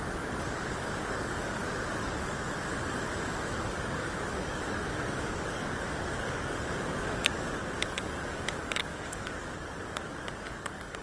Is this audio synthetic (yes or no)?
yes